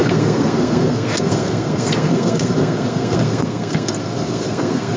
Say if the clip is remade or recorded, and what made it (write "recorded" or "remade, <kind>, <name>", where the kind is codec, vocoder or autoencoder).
remade, codec, SNAC